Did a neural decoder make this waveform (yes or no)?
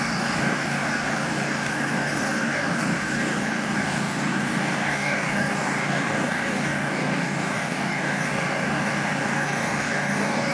yes